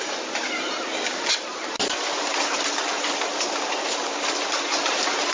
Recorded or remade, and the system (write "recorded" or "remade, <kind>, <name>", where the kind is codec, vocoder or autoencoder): recorded